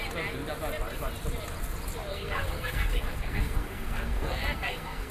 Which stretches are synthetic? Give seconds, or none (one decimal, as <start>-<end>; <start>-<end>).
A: 2.1-5.1